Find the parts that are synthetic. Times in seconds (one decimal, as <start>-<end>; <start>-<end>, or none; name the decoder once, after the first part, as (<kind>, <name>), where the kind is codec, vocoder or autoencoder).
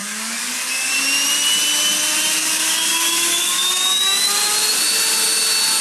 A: 0.0-0.9 (codec, DAC); 2.4-4.3